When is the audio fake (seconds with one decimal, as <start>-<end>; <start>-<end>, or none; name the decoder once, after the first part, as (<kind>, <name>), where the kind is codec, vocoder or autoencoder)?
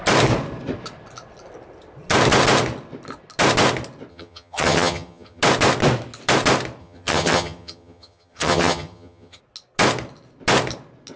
4.1-5.4 (vocoder, HiFi-GAN); 6.8-9.4